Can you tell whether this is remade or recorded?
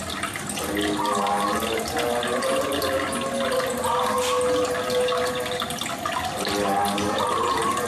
recorded